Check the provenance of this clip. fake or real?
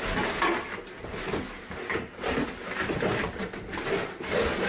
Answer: real